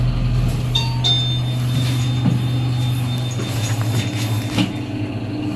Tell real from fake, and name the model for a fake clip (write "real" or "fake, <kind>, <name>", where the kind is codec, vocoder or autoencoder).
real